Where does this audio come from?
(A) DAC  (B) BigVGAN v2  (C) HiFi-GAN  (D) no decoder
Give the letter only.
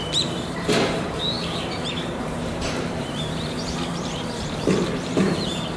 B